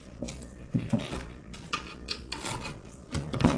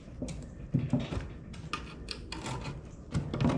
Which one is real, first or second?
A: second